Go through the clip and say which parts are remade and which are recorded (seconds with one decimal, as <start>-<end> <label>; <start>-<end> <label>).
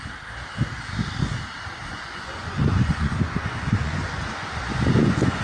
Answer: 0.0-1.9 recorded; 1.9-5.4 remade